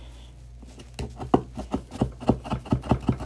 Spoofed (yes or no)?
no